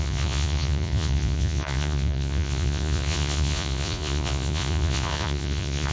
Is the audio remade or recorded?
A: remade